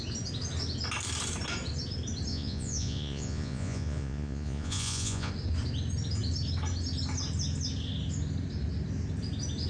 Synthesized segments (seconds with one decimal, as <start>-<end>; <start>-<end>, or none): 2.3-5.3